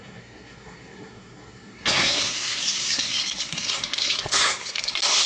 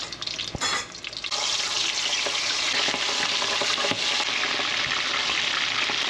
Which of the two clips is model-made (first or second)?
first